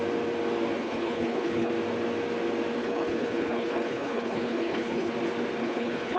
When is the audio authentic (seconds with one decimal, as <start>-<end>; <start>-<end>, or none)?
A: 0.0-0.8; 1.7-2.8; 5.1-5.6